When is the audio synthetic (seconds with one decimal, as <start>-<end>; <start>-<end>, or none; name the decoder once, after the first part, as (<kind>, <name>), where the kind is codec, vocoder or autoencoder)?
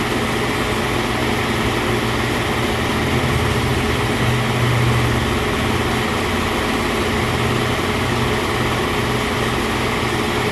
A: none